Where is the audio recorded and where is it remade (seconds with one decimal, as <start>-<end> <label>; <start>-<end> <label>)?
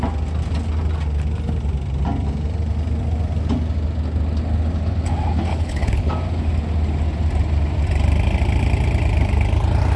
0.0-5.5 recorded; 5.5-6.1 remade; 6.1-10.0 recorded